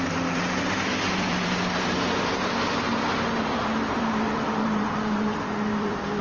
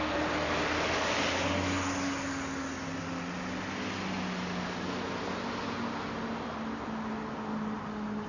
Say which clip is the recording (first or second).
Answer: second